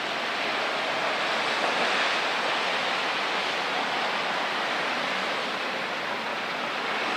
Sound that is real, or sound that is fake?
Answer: real